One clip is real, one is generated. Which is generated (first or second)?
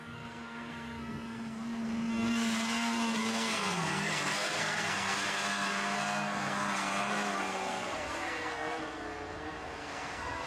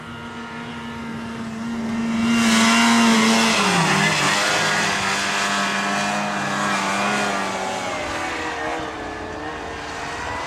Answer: first